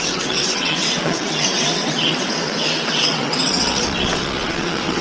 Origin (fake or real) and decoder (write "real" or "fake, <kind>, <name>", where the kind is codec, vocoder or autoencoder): fake, vocoder, WaveNeXt